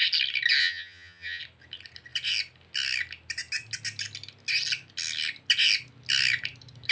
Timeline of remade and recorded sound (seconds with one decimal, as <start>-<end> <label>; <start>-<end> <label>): 0.0-0.6 recorded; 0.6-1.4 remade; 1.4-6.9 recorded